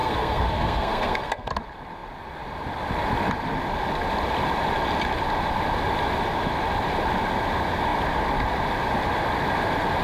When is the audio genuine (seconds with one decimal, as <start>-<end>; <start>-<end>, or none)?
1.5-10.0